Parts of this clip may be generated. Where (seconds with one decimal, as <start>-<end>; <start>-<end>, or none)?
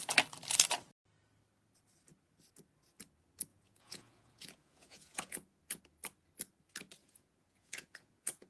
3.5-5.8; 7.0-8.5